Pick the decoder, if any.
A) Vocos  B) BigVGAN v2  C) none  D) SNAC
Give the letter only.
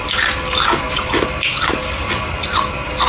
C